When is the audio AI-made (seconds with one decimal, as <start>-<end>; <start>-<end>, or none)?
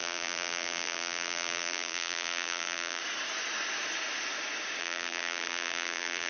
0.0-3.0; 4.8-6.3